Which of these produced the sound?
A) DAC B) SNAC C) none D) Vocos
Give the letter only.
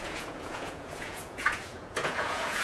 D